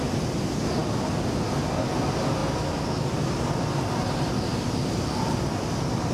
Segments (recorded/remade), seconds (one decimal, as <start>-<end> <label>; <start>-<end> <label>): 0.0-6.1 recorded